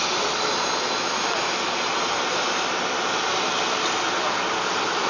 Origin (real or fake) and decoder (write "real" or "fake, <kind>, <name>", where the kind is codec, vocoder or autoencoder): real